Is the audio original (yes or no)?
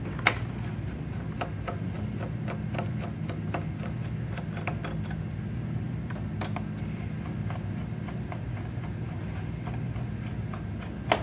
yes